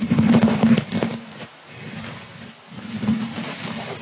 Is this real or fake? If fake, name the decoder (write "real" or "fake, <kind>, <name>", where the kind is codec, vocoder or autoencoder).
real